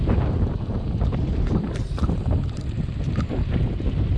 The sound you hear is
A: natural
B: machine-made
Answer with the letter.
B